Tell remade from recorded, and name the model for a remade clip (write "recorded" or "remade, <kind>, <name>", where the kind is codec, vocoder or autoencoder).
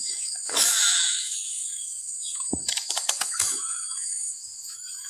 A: remade, autoencoder, DAC-VAE